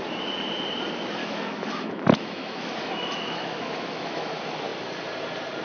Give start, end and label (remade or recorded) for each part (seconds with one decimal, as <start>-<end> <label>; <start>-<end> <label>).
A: 0.0-1.2 recorded; 1.2-4.3 remade; 4.3-5.6 recorded